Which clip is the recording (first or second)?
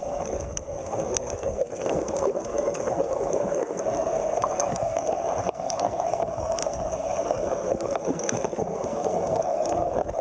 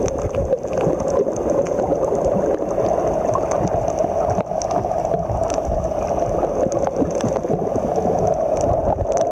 second